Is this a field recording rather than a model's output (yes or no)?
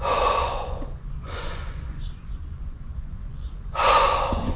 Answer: no